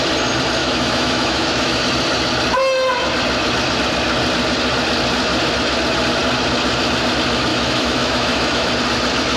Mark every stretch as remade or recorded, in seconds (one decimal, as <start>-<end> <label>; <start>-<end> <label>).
0.0-0.6 recorded; 0.6-1.8 remade; 1.8-7.5 recorded; 7.5-8.7 remade; 8.7-9.4 recorded